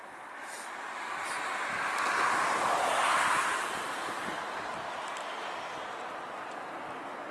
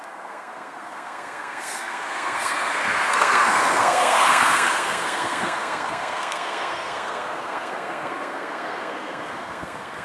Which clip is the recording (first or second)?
first